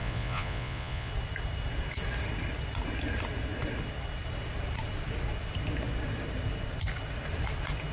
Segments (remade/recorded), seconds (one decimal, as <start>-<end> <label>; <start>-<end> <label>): 0.0-1.1 remade; 1.1-7.9 recorded